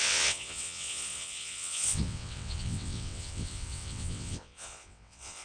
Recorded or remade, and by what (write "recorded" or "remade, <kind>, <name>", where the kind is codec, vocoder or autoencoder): remade, vocoder, WaveNeXt